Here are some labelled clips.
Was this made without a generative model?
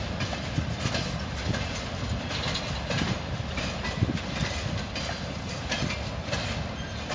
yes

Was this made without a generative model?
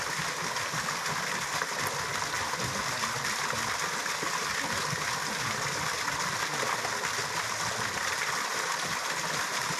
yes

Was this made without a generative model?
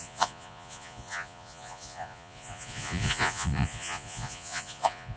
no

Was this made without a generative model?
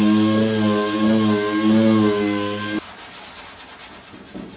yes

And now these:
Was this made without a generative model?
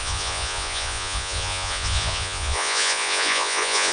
no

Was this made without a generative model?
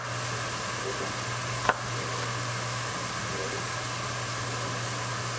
yes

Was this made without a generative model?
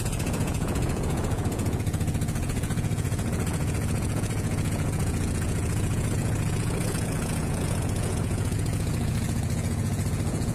no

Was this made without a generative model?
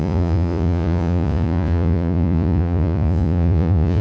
no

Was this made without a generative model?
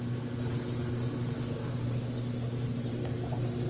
yes